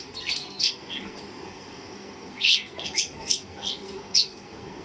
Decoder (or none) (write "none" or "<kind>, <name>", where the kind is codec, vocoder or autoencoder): codec, SNAC